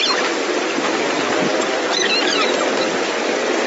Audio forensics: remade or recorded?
recorded